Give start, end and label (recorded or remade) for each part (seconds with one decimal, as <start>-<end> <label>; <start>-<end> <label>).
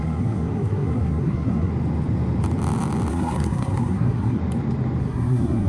0.0-1.7 remade; 1.7-3.1 recorded; 3.1-4.4 remade; 4.4-5.0 recorded; 5.0-5.7 remade